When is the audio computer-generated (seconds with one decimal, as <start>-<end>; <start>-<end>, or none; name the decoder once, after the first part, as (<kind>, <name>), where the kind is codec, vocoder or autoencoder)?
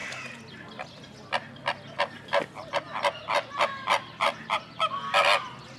none